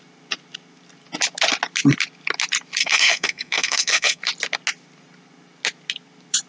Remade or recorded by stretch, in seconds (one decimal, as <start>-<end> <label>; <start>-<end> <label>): 0.0-2.8 recorded; 2.8-4.2 remade; 4.2-6.5 recorded